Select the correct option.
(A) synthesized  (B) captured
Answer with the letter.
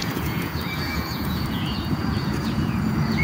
A